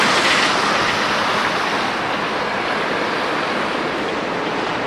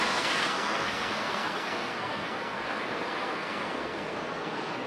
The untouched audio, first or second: first